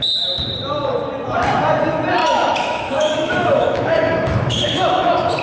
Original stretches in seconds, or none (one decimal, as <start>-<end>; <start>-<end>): 0.0-2.2

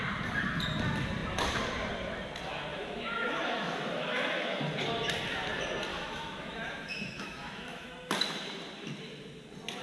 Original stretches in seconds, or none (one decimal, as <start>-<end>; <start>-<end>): 0.0-2.7; 4.6-5.9; 7.9-9.8

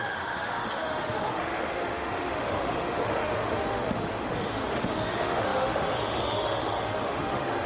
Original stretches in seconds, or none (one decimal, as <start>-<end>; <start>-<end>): none

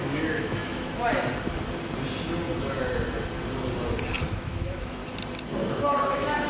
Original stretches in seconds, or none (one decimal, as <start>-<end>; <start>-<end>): 1.1-4.2; 5.0-5.7

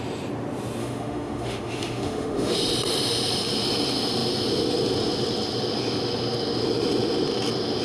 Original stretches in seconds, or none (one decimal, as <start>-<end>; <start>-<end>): 0.0-0.8; 2.6-7.8

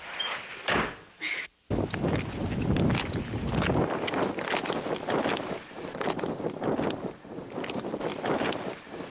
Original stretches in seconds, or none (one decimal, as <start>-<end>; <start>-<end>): 0.0-9.1

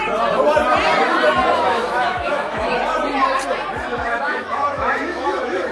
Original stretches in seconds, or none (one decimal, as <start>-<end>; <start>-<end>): 0.0-1.7; 2.7-3.9